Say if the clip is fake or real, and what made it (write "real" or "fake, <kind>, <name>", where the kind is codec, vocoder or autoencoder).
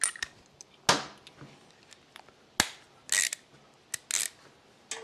real